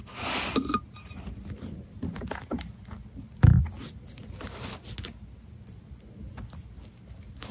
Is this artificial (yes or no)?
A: no